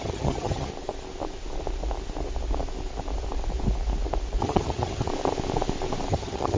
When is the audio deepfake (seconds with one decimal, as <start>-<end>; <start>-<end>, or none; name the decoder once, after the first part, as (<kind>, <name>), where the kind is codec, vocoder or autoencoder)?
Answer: 0.0-0.7 (vocoder, HiFi-GAN); 4.4-5.1; 6.1-6.6